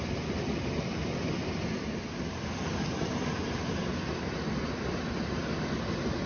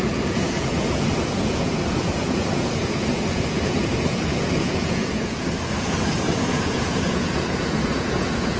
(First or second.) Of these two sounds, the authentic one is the first